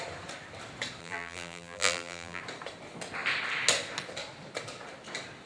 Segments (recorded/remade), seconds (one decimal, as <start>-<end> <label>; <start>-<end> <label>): 0.0-1.0 recorded; 1.0-2.4 remade; 2.4-5.5 recorded